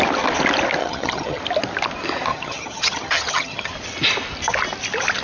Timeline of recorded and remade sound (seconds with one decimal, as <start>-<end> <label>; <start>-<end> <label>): 0.0-0.8 recorded; 0.8-1.4 remade; 1.4-2.3 recorded; 2.3-3.7 remade; 3.7-5.2 recorded